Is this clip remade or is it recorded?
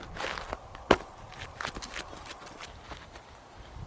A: recorded